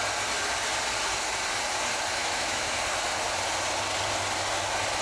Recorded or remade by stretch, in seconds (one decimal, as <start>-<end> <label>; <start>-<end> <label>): 0.0-2.2 recorded; 2.2-2.8 remade; 2.8-5.0 recorded